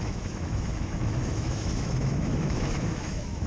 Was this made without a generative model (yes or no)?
no